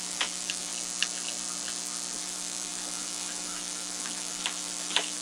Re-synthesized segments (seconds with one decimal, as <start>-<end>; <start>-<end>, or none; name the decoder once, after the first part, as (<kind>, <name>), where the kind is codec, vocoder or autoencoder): 0.0-0.7 (autoencoder, DAC-VAE); 2.2-5.2